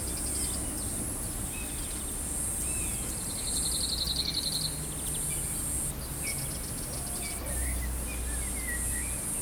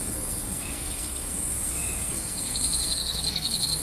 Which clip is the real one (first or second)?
first